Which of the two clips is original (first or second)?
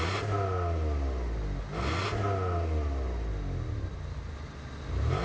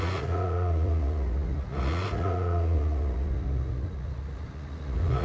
first